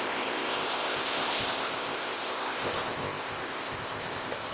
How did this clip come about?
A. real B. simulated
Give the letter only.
B